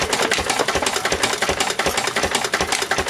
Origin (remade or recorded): recorded